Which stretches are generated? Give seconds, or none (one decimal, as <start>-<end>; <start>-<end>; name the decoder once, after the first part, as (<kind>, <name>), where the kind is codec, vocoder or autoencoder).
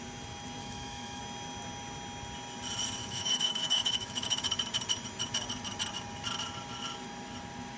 0.6-1.2 (autoencoder, DAC-VAE); 3.0-4.4